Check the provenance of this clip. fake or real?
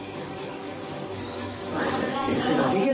fake